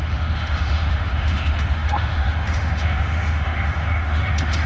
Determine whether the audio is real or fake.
fake